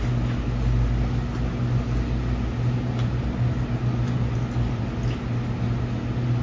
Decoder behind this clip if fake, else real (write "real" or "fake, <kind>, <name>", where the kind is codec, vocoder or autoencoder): real